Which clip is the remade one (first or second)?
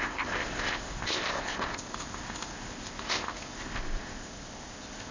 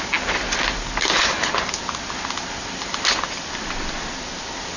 first